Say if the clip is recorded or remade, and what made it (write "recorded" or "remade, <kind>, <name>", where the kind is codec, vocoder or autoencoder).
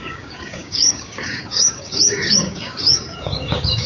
remade, codec, DAC